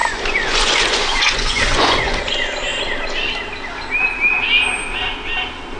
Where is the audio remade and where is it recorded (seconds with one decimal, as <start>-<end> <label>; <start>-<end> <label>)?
0.0-2.2 remade; 2.2-5.8 recorded